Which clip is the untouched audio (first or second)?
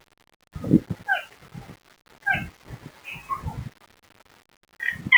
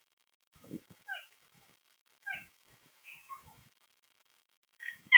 first